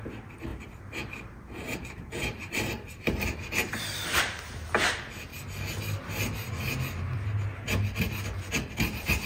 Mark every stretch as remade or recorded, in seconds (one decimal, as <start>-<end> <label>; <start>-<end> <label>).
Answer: 0.0-0.5 recorded; 0.5-4.2 remade; 4.2-9.3 recorded